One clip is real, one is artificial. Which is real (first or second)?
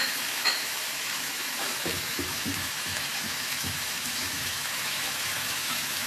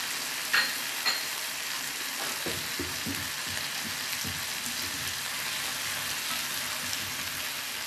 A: second